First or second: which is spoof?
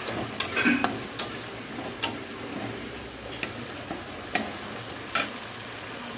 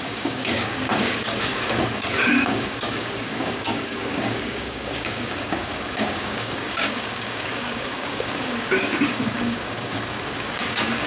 second